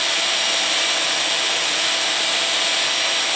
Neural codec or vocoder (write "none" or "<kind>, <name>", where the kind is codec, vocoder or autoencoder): none